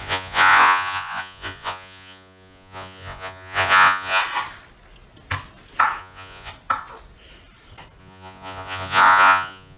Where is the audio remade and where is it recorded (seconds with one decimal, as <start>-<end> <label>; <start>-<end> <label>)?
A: 0.0-4.2 remade; 4.2-6.0 recorded; 6.0-6.5 remade; 6.5-8.0 recorded; 8.0-9.8 remade